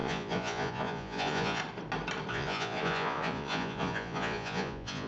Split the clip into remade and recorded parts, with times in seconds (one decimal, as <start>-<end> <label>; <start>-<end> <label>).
0.0-1.6 remade; 1.6-2.3 recorded; 2.3-5.1 remade